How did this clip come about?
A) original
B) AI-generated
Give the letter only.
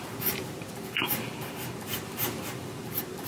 B